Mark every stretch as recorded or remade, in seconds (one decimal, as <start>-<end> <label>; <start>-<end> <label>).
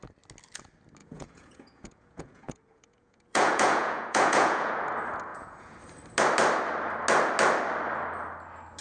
0.0-1.0 recorded; 1.0-4.7 remade; 4.7-5.3 recorded; 5.3-5.8 remade; 5.8-8.8 recorded